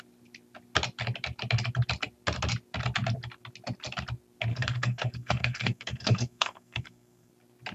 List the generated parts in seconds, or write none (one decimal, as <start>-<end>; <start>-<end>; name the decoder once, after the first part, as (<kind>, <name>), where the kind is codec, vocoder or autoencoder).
4.5-7.3 (codec, SNAC)